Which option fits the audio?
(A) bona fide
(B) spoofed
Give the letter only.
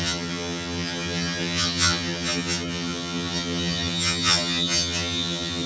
B